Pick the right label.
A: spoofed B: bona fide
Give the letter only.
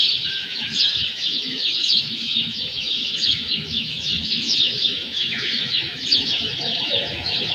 A